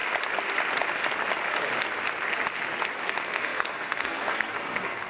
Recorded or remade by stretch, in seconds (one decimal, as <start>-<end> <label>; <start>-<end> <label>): 0.0-3.0 recorded; 3.0-5.1 remade